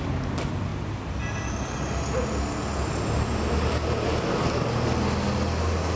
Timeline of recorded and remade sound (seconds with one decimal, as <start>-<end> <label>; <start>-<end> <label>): 0.0-6.0 recorded